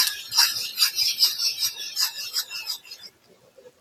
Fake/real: fake